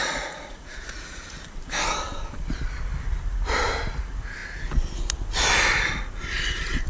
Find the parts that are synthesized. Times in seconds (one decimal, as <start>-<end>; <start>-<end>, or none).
0.0-1.2